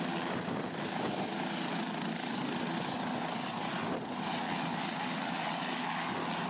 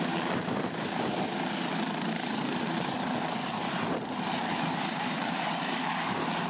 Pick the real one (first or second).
first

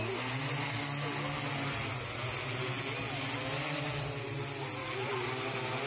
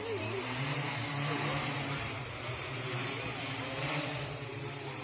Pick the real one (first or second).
first